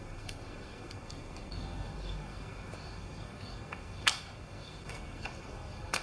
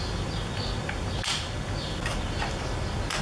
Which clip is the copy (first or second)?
first